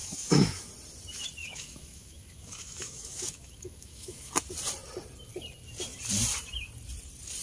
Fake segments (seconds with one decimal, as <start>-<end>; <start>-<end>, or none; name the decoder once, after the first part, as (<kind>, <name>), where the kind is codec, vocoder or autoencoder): 0.0-0.7 (autoencoder, DAC-VAE); 1.4-4.3